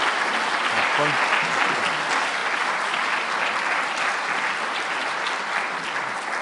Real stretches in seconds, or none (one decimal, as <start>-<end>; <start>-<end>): 0.0-2.4